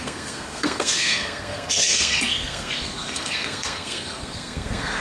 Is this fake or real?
fake